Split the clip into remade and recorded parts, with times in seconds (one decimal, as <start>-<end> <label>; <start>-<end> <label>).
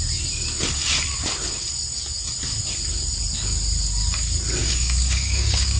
0.0-4.6 recorded; 4.6-5.8 remade